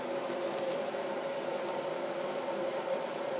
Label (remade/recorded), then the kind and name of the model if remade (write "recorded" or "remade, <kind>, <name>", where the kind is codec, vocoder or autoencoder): remade, vocoder, BigVGAN v2